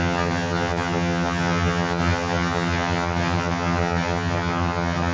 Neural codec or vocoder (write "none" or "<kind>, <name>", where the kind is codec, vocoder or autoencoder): vocoder, HiFi-GAN